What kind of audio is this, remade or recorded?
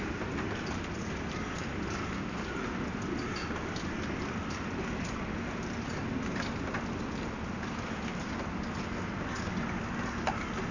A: recorded